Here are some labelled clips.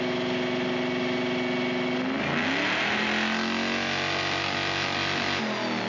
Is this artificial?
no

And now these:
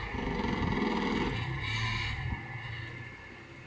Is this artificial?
no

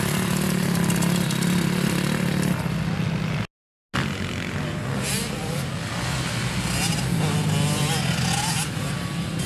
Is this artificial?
no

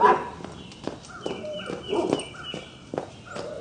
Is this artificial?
no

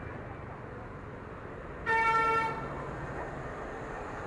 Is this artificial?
no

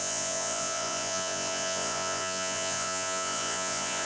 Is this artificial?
yes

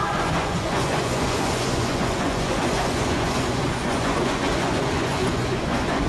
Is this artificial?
yes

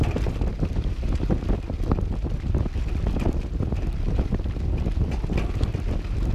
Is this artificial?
no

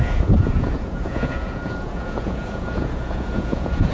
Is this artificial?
yes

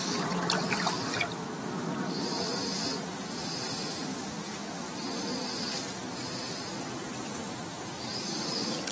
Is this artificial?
no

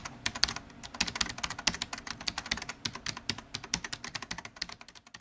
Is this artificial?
no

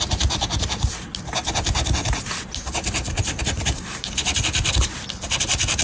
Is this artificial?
no